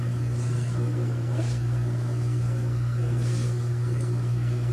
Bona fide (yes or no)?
no